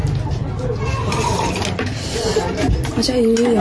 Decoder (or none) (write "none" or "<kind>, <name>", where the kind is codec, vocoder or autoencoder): none